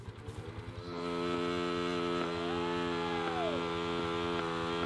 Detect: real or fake real